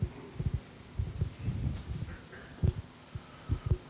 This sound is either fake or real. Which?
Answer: real